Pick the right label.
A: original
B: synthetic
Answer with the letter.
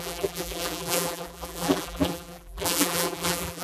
B